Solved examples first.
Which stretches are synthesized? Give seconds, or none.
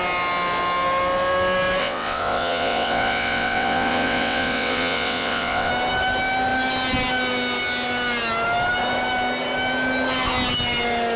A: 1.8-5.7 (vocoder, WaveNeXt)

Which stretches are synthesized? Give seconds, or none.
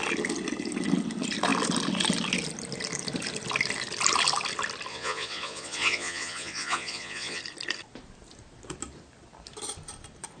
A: 4.9-7.4 (vocoder, Vocos)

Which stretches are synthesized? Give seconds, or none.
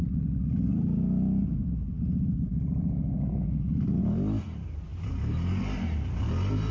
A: 0.0-4.0 (vocoder, BigVGAN v2)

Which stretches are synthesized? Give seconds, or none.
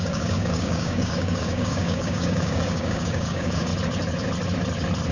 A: 0.0-3.7 (codec, DAC)